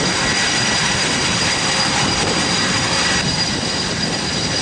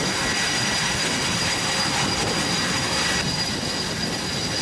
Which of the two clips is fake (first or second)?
first